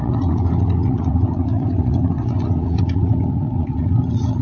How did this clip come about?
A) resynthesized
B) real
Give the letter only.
A